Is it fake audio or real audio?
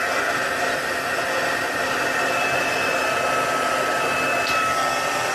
real